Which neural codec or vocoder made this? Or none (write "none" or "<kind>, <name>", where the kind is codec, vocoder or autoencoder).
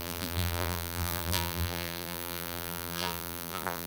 vocoder, BigVGAN v2